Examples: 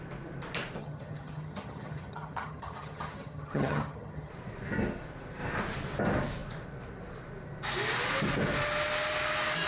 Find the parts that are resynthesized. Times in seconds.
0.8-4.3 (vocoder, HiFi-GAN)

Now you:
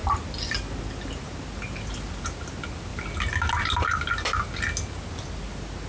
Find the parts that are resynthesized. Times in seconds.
none

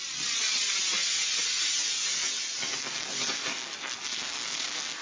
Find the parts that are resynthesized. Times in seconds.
none

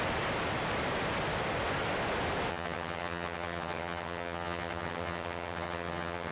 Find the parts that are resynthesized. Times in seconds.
2.5-6.3 (vocoder, HiFi-GAN)

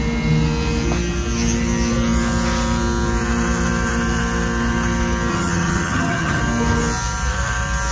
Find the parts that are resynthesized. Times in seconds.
5.3-6.4 (vocoder, HiFi-GAN)